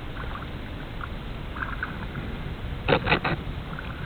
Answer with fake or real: real